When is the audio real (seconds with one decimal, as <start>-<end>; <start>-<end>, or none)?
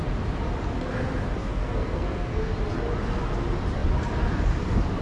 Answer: 0.0-1.4; 2.5-5.0